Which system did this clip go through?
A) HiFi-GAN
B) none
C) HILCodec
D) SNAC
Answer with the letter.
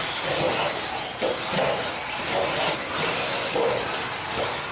B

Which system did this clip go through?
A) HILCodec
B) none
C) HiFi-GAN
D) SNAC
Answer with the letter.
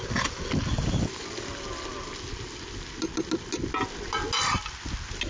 B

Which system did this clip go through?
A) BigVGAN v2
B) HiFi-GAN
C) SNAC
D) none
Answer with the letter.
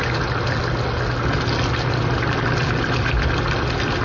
D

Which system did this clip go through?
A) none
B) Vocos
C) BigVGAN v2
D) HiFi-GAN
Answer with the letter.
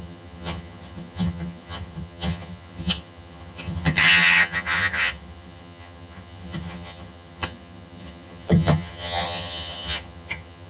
D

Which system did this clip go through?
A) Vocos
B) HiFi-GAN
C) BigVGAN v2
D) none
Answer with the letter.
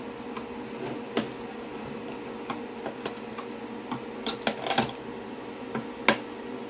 D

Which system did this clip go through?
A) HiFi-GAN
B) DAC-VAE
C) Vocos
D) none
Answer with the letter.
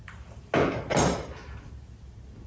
D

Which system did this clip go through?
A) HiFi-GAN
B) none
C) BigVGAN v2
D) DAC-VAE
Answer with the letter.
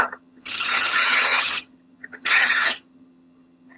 A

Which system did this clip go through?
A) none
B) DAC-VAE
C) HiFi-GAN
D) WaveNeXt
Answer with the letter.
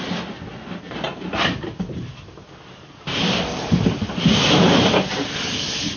A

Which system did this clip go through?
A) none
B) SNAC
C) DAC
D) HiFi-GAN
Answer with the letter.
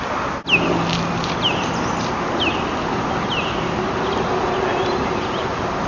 A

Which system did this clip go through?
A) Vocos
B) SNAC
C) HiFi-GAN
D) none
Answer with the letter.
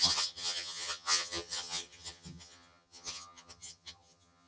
C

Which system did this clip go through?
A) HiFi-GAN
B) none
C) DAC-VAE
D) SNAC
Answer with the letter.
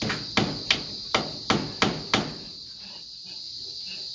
B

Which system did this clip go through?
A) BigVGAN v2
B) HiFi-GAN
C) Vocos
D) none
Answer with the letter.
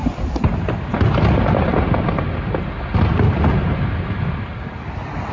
D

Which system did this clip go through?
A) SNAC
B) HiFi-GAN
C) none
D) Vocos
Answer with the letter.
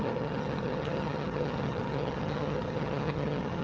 B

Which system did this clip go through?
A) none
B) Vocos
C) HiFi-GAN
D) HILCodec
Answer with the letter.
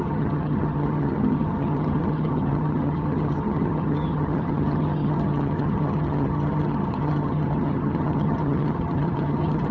C